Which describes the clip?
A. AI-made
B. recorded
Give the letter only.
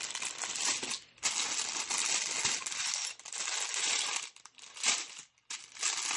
B